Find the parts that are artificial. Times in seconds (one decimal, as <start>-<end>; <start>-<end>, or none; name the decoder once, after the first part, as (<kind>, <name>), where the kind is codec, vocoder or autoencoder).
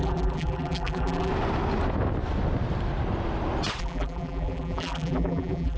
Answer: 0.0-1.3 (vocoder, BigVGAN v2); 3.8-5.8